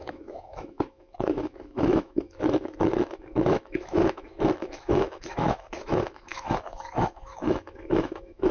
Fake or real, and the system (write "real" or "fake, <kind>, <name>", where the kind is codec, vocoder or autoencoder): fake, autoencoder, DAC-VAE